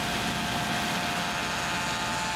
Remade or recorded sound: recorded